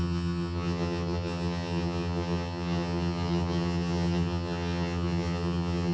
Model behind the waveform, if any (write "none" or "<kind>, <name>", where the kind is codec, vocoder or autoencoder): vocoder, HiFi-GAN